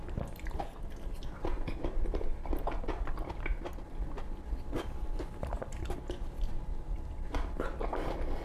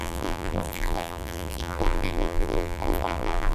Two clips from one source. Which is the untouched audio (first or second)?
first